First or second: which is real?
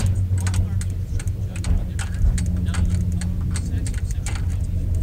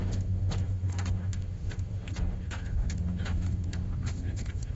first